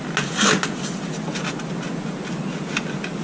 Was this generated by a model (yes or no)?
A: no